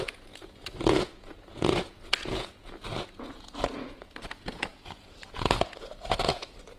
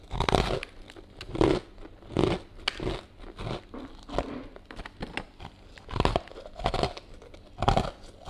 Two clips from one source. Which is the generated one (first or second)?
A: first